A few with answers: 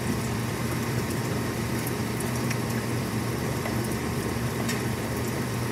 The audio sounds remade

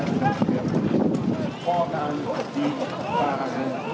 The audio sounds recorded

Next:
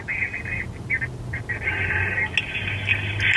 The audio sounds recorded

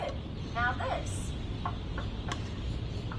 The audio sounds recorded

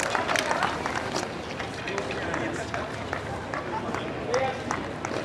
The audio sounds recorded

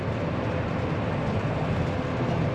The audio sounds recorded